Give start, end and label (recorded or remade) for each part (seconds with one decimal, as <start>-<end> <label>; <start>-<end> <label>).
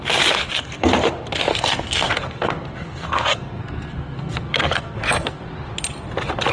0.0-0.4 recorded; 0.4-0.9 remade; 0.9-1.5 recorded; 1.5-5.4 remade; 5.4-6.5 recorded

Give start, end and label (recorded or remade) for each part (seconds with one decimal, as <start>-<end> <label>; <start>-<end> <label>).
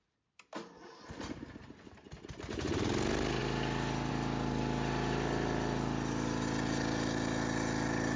0.0-8.2 recorded